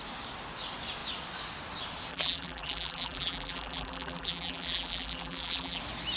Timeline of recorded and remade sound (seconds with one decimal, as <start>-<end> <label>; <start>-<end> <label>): 0.0-2.1 recorded; 2.1-5.8 remade; 5.8-6.2 recorded